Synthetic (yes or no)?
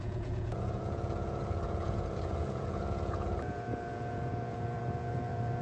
yes